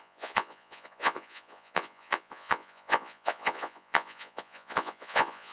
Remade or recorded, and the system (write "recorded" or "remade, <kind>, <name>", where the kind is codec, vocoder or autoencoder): remade, vocoder, Vocos